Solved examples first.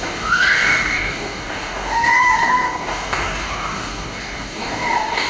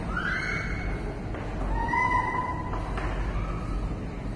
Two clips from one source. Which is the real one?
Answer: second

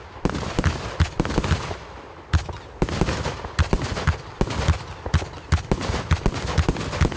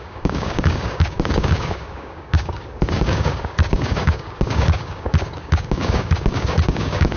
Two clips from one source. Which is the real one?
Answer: first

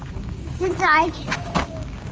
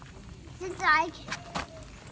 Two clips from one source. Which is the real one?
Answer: second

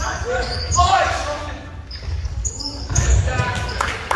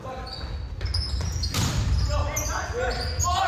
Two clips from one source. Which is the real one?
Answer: second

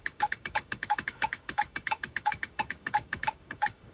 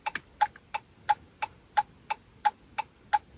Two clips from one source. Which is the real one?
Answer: second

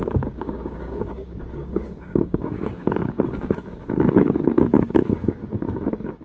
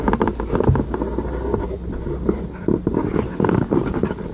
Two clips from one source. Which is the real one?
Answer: second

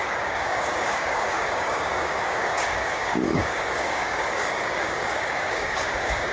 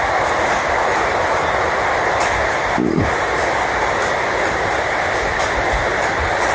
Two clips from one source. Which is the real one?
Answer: second